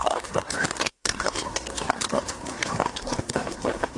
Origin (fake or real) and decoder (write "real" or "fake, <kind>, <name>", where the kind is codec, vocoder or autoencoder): fake, codec, SNAC